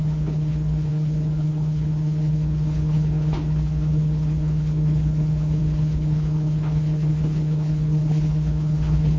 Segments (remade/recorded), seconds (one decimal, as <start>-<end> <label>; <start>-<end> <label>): 0.0-9.2 remade